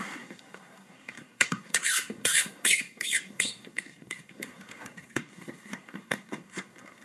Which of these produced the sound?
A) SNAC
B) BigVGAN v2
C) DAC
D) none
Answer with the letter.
A